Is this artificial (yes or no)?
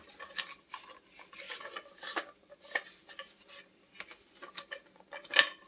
no